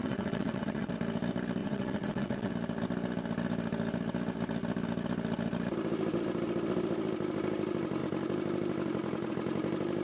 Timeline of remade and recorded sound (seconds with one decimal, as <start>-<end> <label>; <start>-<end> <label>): 0.0-0.9 remade; 0.9-1.6 recorded; 1.6-2.5 remade; 2.5-10.0 recorded